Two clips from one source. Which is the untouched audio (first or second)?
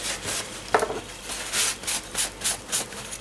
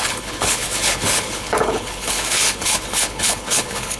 first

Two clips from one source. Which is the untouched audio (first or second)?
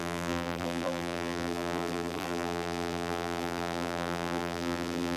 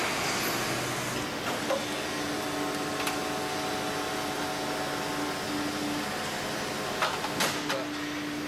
second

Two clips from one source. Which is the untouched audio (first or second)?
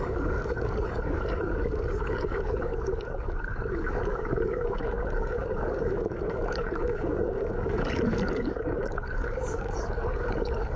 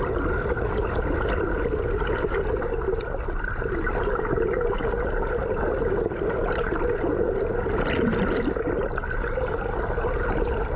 second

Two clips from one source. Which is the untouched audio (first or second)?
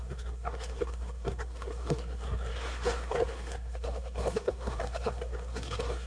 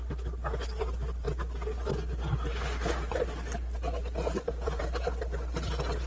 second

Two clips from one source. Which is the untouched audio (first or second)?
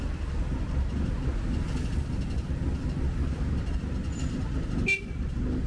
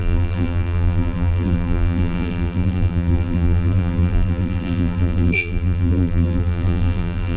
first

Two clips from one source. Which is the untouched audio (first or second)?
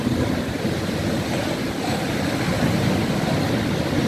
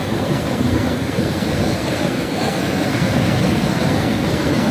first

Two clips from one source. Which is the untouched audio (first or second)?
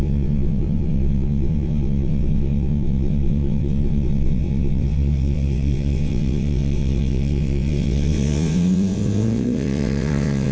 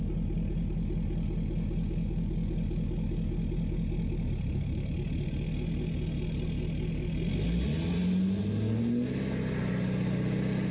second